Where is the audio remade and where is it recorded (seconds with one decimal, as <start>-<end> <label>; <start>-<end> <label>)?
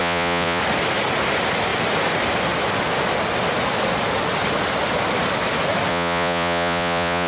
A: 0.0-0.6 remade; 0.6-5.9 recorded; 5.9-7.3 remade